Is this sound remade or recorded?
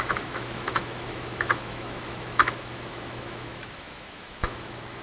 remade